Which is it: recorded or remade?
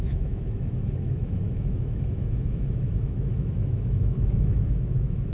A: remade